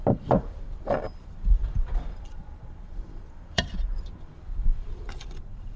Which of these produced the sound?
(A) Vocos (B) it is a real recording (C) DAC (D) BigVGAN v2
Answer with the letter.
D